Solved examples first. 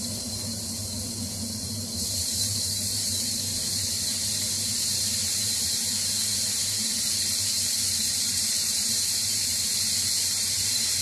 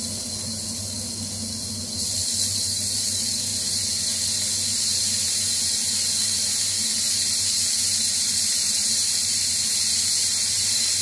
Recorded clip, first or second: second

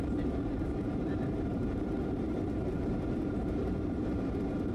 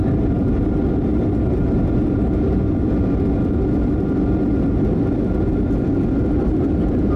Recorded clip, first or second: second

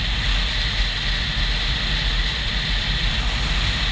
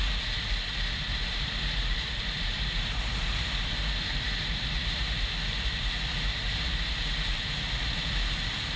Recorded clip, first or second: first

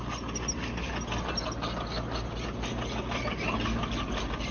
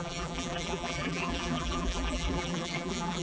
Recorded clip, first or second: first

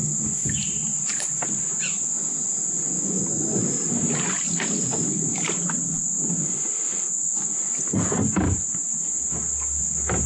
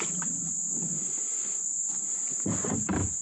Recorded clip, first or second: first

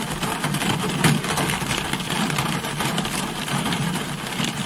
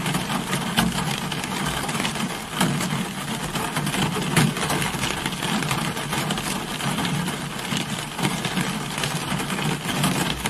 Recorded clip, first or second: second